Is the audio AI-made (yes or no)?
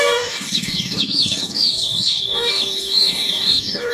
yes